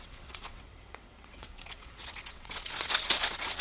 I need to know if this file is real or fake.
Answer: fake